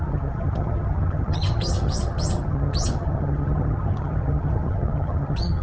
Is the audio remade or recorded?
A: remade